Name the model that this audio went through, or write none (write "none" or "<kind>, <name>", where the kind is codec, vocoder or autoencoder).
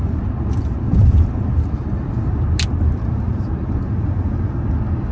none